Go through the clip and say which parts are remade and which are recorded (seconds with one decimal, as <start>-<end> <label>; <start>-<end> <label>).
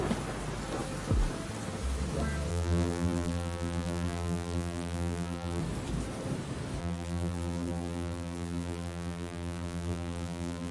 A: 0.0-2.5 recorded; 2.5-5.6 remade; 5.6-6.8 recorded; 6.8-10.7 remade